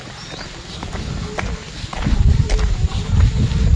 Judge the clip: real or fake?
real